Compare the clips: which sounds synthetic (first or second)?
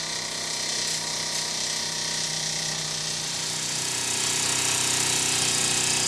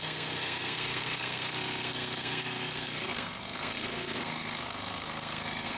second